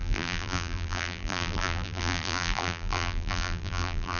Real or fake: fake